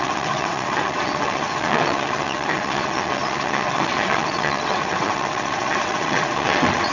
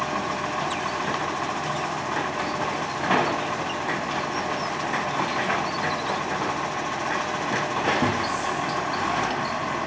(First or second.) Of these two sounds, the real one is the second